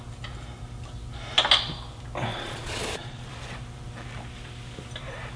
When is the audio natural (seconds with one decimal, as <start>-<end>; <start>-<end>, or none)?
0.0-2.3; 3.3-5.4